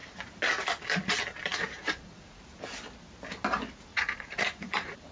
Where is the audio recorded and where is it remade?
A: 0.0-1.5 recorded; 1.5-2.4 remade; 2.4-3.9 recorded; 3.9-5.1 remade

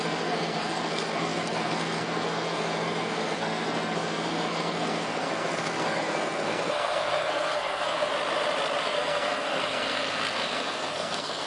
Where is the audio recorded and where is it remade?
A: 0.0-8.1 remade; 8.1-8.8 recorded; 8.8-11.5 remade

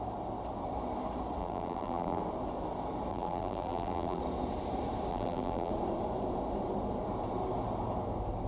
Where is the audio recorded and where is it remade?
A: 0.0-1.4 recorded; 1.4-2.2 remade; 2.2-3.1 recorded; 3.1-4.2 remade; 4.2-5.1 recorded; 5.1-5.7 remade; 5.7-8.5 recorded

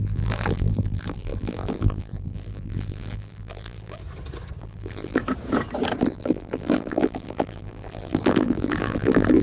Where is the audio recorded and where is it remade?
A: 0.0-4.0 remade; 4.0-4.6 recorded; 4.6-5.2 remade; 5.2-6.0 recorded; 6.0-9.4 remade

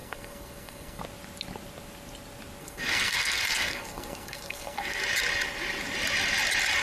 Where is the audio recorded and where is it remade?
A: 0.0-1.0 remade; 1.0-2.6 recorded; 2.6-5.0 remade; 5.0-6.8 recorded

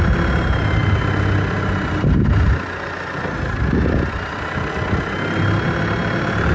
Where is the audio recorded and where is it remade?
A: 0.0-6.5 recorded

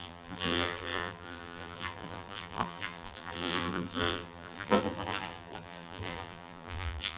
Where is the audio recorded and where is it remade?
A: 0.0-7.2 remade

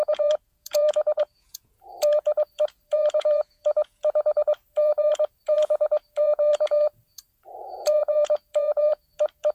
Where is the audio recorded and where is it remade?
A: 0.0-9.5 remade